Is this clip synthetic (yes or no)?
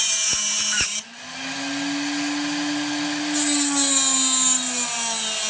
no